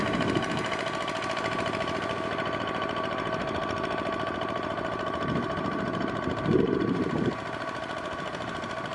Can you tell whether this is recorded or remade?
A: remade